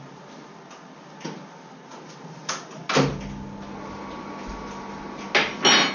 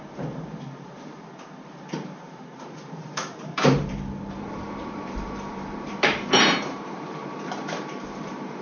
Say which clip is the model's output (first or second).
second